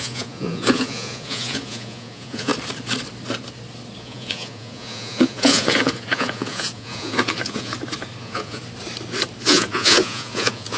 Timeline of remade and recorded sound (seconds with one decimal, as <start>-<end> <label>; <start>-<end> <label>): 0.0-2.5 remade; 2.5-4.0 recorded; 4.0-7.7 remade; 7.7-8.2 recorded; 8.2-8.6 remade; 8.6-9.4 recorded; 9.4-10.8 remade